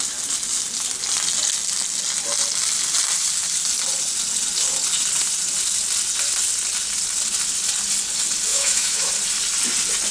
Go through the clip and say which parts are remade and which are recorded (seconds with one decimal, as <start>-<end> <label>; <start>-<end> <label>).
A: 0.0-8.5 recorded; 8.5-9.1 remade; 9.1-10.1 recorded